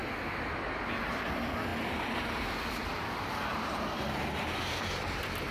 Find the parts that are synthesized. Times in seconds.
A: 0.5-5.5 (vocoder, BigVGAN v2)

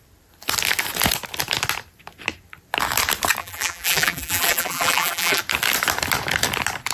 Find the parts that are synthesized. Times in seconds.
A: 3.4-5.4 (vocoder, BigVGAN v2)

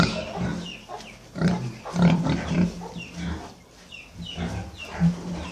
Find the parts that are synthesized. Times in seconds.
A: none

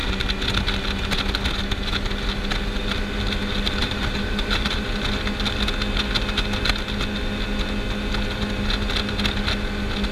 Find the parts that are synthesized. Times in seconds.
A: 3.8-5.0 (vocoder, BigVGAN v2)

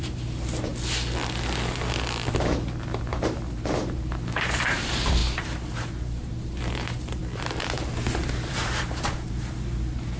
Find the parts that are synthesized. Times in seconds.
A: 0.0-0.7 (vocoder, BigVGAN v2); 3.0-10.2

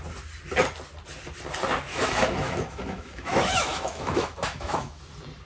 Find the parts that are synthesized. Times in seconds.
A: 1.9-5.0 (autoencoder, DAC-VAE)

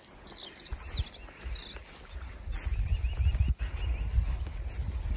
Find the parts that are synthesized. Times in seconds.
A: none

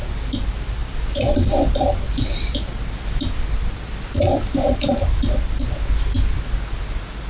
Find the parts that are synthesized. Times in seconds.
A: 0.8-5.2 (vocoder, BigVGAN v2)